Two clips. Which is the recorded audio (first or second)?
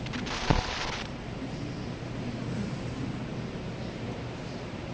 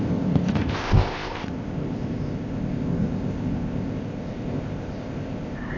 first